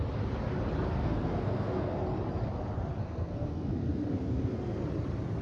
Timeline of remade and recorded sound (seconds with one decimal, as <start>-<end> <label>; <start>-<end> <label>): 0.0-0.9 recorded; 0.9-2.0 remade; 2.0-3.0 recorded; 3.0-4.8 remade; 4.8-5.4 recorded

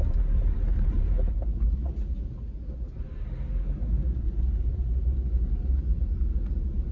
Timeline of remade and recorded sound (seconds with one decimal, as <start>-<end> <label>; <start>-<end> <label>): 0.0-1.8 remade; 1.8-3.0 recorded; 3.0-6.9 remade